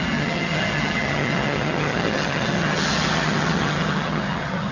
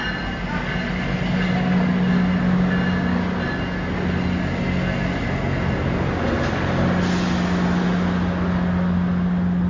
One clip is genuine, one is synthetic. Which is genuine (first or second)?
second